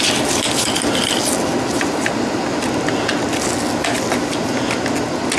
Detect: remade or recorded recorded